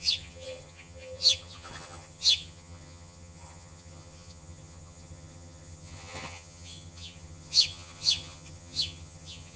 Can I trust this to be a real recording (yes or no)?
no